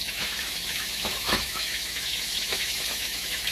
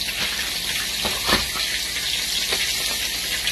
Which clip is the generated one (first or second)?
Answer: first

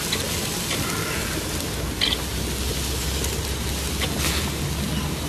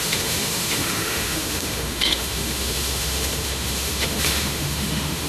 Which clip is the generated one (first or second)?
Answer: second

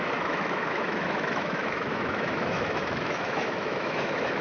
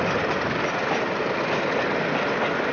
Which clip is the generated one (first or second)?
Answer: first